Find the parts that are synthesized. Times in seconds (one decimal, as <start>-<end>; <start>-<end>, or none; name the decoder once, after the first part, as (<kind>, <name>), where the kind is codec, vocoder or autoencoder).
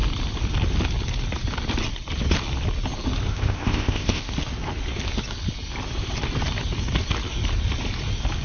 3.3-4.3 (codec, ZipCodec)